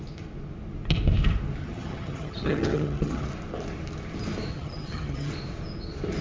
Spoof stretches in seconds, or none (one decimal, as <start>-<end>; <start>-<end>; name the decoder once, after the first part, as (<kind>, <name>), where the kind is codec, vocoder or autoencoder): 1.6-3.3 (vocoder, HiFi-GAN); 4.5-5.3